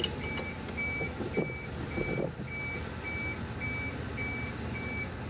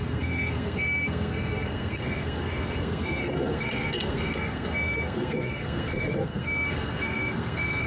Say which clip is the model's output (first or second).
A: second